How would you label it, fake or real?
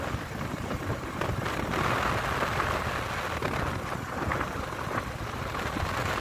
real